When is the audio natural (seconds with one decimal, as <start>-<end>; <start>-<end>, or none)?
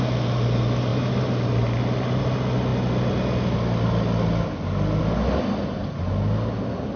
0.0-7.0